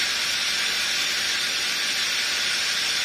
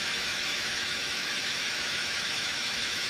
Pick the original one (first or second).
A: first